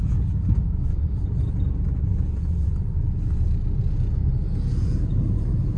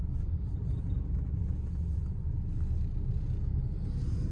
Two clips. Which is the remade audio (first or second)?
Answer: first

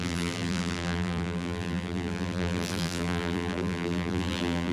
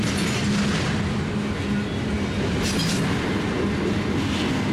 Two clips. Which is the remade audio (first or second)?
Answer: first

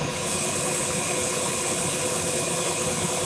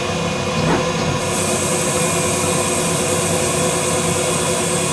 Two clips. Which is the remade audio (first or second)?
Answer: first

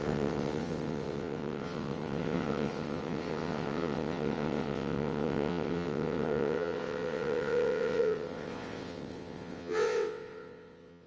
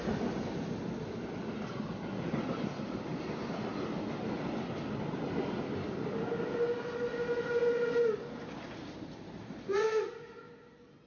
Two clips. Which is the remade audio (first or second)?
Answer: first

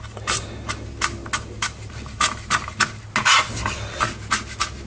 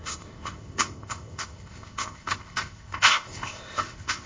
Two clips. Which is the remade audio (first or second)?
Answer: second